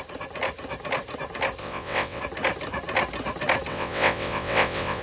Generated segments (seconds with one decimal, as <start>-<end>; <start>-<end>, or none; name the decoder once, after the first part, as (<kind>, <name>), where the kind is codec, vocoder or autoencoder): 1.6-2.2 (vocoder, WaveNeXt); 3.7-5.0